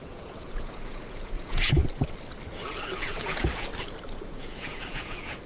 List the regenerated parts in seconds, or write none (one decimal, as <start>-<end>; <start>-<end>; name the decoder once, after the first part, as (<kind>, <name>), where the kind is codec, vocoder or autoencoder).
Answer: 0.0-1.8 (vocoder, Vocos); 3.1-3.7; 4.3-5.5